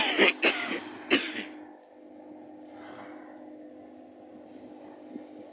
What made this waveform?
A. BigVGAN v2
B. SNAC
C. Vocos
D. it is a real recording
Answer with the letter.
D